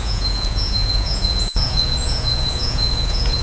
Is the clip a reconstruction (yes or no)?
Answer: yes